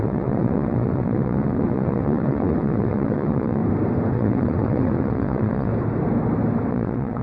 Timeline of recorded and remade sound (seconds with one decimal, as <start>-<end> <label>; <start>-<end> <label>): 0.0-3.6 remade; 3.6-4.1 recorded; 4.1-5.7 remade; 5.7-6.7 recorded; 6.7-7.2 remade